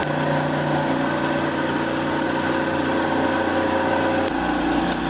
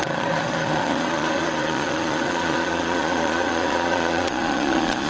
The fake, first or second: second